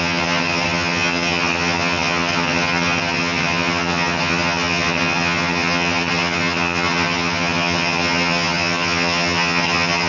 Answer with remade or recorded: remade